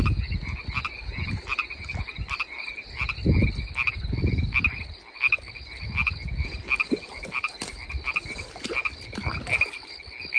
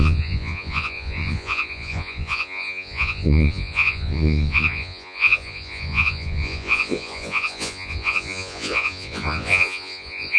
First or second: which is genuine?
first